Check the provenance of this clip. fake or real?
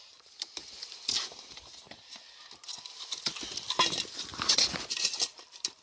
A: real